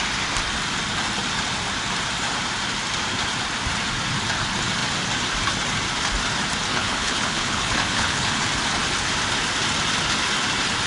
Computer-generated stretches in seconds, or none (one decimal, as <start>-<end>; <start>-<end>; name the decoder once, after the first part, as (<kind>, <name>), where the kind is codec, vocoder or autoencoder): 6.7-8.4 (codec, HILCodec)